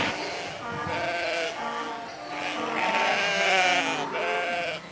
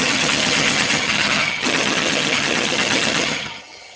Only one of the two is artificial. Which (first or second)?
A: second